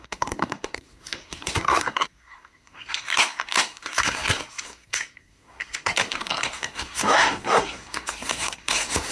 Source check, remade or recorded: remade